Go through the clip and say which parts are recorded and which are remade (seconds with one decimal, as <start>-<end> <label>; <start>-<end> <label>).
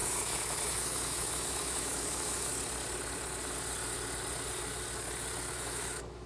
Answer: 0.0-2.5 remade; 2.5-5.5 recorded; 5.5-6.3 remade